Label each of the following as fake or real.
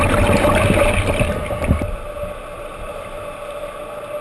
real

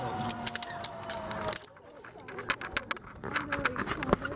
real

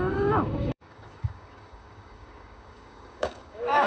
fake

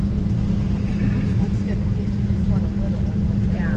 real